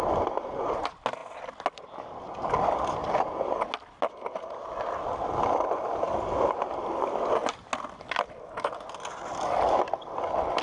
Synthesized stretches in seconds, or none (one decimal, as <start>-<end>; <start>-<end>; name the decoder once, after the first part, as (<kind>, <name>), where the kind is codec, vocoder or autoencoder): none